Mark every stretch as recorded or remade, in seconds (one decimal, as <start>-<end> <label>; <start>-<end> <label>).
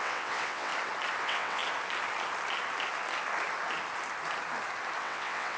0.0-0.7 remade; 0.7-1.2 recorded; 1.2-1.6 remade; 1.6-5.0 recorded; 5.0-5.6 remade